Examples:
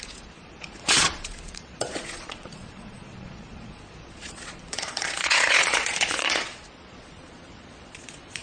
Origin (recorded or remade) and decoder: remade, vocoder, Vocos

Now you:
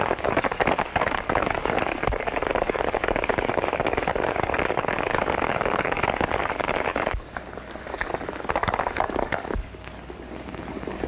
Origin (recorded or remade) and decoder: remade, codec, DAC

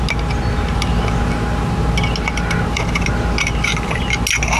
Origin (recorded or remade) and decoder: recorded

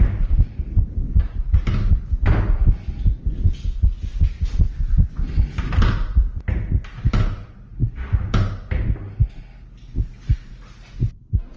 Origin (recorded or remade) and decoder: recorded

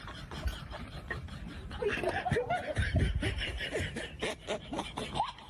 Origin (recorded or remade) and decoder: remade, vocoder, BigVGAN v2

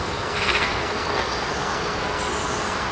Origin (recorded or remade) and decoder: remade, codec, SNAC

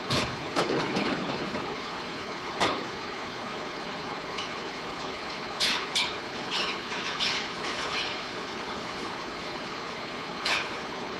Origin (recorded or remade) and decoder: remade, codec, HILCodec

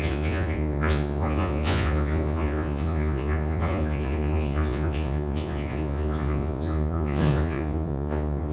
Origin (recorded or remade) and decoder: remade, vocoder, Vocos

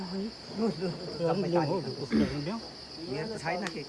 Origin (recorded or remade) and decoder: recorded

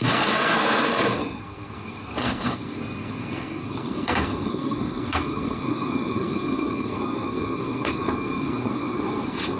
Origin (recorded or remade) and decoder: remade, codec, SNAC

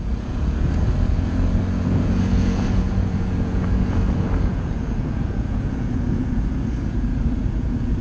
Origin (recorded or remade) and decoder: remade, vocoder, Vocos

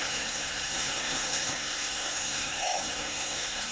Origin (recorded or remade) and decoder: remade, codec, SNAC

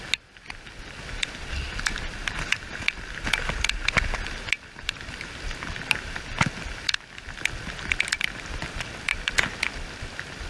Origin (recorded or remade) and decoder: recorded